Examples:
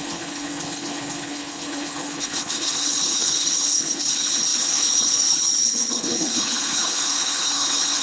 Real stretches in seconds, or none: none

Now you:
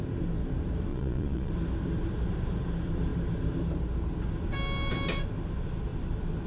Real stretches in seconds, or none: 0.0-0.9; 1.5-6.5

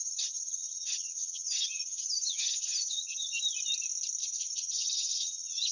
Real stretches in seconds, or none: 3.4-4.2

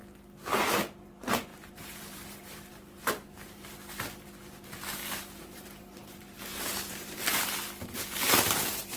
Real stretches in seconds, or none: 0.0-1.5; 3.7-5.0; 7.2-9.0